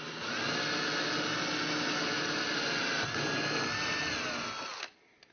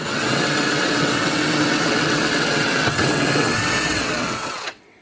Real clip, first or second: first